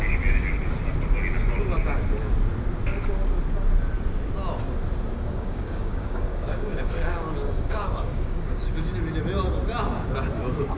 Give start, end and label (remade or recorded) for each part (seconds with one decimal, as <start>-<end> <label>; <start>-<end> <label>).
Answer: 0.0-5.1 recorded; 5.1-8.7 remade; 8.7-10.8 recorded